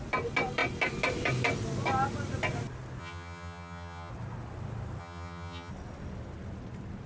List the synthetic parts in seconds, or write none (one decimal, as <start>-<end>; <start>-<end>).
3.0-4.1; 5.0-5.7

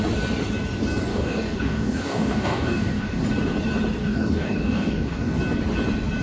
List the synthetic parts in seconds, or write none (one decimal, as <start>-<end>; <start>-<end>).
1.1-3.2; 4.0-5.4

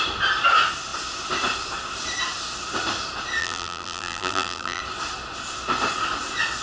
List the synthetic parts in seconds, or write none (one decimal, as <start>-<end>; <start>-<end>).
3.4-4.8

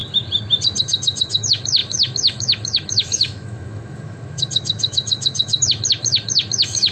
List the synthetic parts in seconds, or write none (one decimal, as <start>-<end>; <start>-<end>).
0.8-6.9

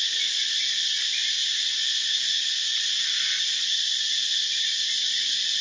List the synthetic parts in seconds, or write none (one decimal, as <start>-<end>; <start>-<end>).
none

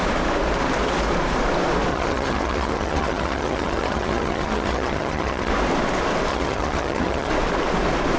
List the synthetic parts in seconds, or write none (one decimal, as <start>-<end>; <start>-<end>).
1.9-5.5; 6.3-7.3